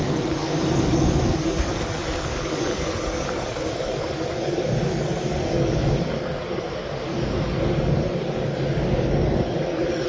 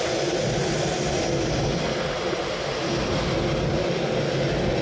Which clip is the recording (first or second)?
second